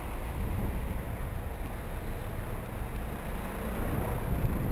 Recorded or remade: recorded